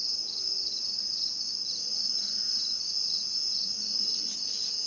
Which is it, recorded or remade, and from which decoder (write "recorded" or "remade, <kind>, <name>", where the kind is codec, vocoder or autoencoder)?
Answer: recorded